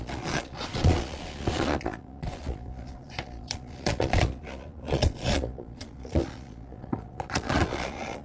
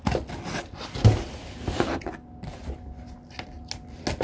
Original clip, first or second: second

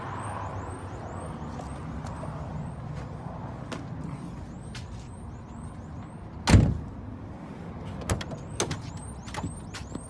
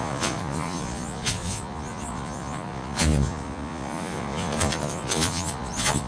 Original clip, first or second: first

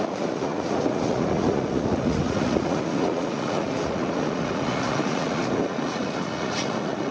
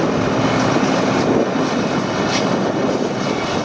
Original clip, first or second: second